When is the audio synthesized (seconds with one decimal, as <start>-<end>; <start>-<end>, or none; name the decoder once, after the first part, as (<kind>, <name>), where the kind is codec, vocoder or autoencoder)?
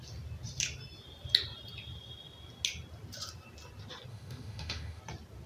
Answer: 4.1-5.0 (autoencoder, DAC-VAE)